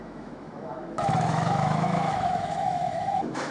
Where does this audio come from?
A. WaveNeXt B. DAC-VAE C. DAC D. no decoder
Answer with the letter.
B